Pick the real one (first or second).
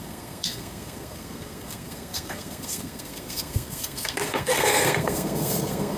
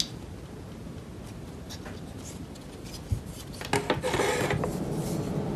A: second